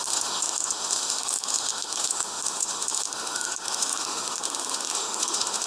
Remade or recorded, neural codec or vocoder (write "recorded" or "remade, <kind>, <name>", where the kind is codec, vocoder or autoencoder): remade, autoencoder, DAC-VAE